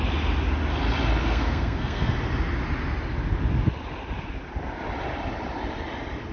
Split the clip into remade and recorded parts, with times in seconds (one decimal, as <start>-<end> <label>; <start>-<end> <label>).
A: 0.0-1.2 recorded; 1.2-2.1 remade; 2.1-6.3 recorded